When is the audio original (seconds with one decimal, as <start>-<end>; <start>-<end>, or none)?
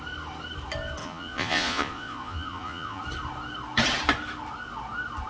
0.0-1.0; 3.0-5.3